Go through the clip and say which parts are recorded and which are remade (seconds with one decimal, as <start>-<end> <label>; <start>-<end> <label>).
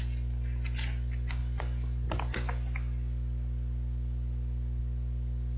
0.0-5.6 recorded